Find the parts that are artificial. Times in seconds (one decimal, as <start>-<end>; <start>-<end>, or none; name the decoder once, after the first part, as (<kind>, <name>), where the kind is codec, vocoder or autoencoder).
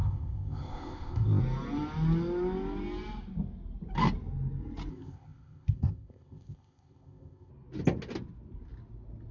0.0-1.4 (codec, ZipCodec); 4.9-7.5